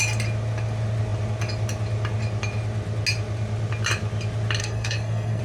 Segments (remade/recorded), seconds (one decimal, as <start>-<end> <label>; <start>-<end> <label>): 0.0-4.6 recorded; 4.6-5.4 remade